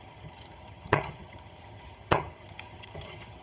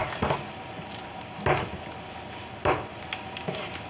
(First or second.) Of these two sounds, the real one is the second